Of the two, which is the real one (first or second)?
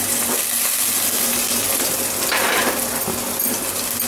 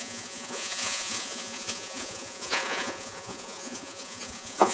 first